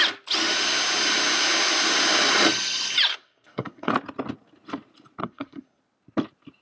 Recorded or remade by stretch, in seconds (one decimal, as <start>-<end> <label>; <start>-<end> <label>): 0.0-3.1 recorded; 3.1-3.9 remade; 3.9-5.2 recorded; 5.2-5.8 remade; 5.8-6.6 recorded